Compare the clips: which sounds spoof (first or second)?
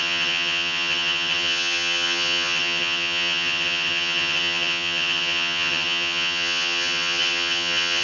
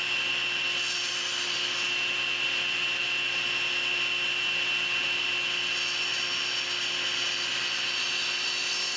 first